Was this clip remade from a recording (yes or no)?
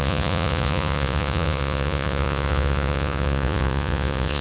yes